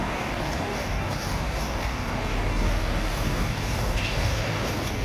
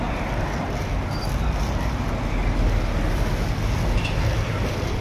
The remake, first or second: first